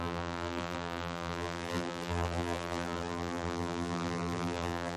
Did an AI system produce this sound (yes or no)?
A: yes